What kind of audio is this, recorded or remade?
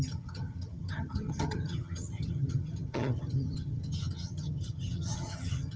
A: remade